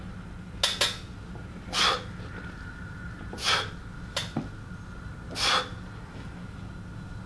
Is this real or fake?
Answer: real